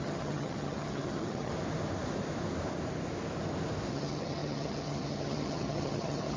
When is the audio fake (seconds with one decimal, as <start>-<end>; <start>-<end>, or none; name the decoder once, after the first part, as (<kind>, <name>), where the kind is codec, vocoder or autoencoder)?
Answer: 0.0-1.5 (vocoder, HiFi-GAN); 3.9-6.4